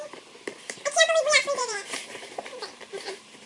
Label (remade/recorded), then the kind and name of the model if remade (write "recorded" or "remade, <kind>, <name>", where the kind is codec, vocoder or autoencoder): remade, vocoder, BigVGAN v2